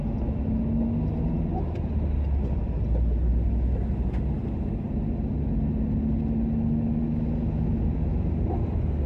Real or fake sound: real